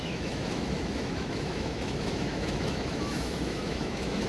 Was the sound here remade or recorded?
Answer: remade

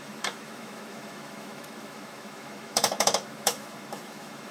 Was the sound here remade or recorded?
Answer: remade